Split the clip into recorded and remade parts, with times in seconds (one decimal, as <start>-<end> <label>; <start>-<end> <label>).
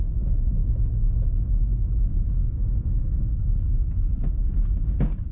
0.0-2.4 recorded; 2.4-3.6 remade; 3.6-5.3 recorded